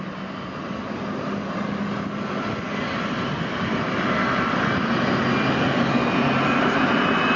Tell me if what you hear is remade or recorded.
recorded